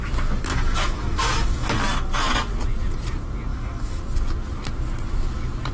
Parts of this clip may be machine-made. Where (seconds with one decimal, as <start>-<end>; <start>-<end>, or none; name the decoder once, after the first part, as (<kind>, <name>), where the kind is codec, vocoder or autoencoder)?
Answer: 0.5-1.7 (autoencoder, DAC-VAE); 3.5-4.0